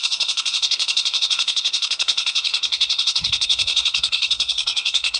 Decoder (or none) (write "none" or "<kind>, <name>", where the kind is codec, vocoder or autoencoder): codec, SNAC